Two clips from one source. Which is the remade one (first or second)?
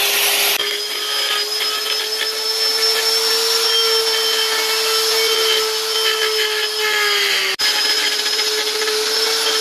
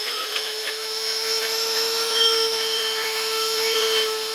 second